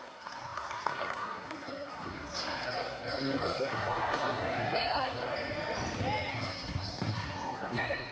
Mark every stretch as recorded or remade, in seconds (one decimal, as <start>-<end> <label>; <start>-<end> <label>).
0.0-5.3 remade; 5.3-6.3 recorded; 6.3-8.1 remade

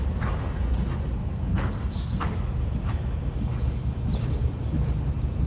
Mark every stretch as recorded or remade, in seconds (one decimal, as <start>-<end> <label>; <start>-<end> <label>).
0.0-1.2 recorded; 1.2-2.2 remade; 2.2-5.5 recorded

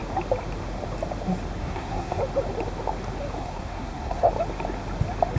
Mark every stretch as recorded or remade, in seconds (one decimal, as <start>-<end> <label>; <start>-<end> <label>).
0.0-1.6 recorded; 1.6-2.2 remade; 2.2-3.4 recorded; 3.4-4.3 remade; 4.3-5.4 recorded

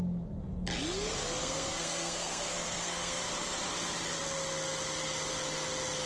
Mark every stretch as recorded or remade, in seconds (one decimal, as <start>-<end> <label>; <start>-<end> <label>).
0.0-1.4 recorded; 1.4-3.3 remade; 3.3-6.1 recorded

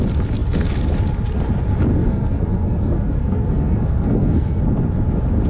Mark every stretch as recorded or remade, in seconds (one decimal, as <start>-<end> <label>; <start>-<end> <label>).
0.0-1.9 recorded; 1.9-4.6 remade; 4.6-5.5 recorded

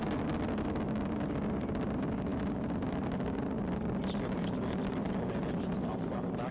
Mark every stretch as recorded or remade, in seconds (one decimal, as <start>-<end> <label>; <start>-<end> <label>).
0.0-6.5 recorded

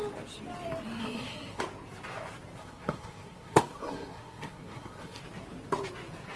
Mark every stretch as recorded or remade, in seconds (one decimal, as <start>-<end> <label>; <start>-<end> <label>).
0.0-1.0 recorded; 1.0-1.6 remade; 1.6-2.6 recorded; 2.6-5.2 remade; 5.2-6.4 recorded